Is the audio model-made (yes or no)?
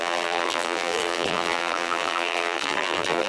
yes